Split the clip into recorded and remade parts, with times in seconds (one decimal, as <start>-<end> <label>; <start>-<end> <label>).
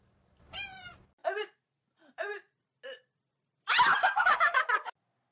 0.0-4.0 recorded; 4.0-4.6 remade; 4.6-5.3 recorded